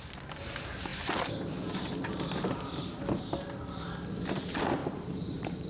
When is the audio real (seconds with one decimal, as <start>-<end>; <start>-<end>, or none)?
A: 0.0-4.8

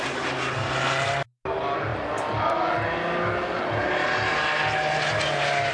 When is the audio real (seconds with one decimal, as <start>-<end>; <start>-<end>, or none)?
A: 0.0-5.7

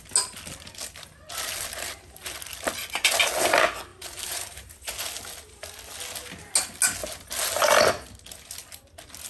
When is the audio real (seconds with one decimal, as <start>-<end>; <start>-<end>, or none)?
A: 0.0-3.9; 4.7-9.3

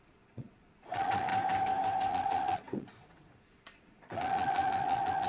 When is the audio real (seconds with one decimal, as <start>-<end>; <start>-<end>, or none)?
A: 1.3-2.1

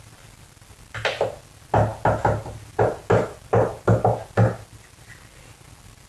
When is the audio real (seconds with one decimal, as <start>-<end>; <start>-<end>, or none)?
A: 0.0-6.1

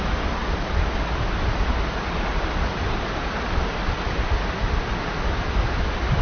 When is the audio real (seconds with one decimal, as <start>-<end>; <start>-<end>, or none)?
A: 0.0-6.2